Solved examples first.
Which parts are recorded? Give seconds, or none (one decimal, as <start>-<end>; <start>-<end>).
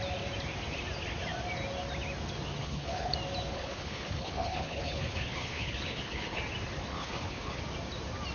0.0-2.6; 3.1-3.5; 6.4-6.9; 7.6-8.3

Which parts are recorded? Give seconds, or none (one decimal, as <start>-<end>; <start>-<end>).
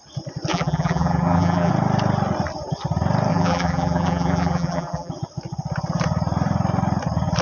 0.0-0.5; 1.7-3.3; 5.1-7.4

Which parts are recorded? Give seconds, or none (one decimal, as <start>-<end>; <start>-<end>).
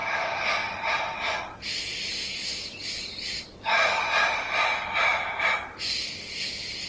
0.0-3.5; 4.0-6.9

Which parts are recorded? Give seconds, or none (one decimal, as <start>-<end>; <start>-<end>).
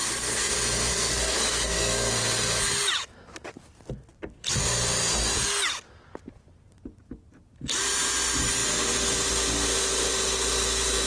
0.5-0.9; 2.1-11.1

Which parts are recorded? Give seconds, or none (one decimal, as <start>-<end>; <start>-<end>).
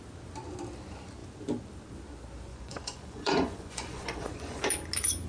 0.0-2.5; 4.6-5.3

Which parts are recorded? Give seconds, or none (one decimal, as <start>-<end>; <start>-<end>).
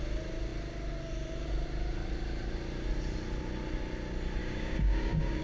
0.0-4.4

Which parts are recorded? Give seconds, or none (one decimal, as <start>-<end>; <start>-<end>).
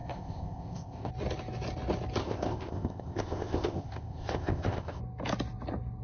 1.1-2.2; 5.0-6.0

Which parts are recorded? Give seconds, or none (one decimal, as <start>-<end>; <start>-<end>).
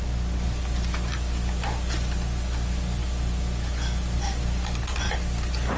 0.0-5.8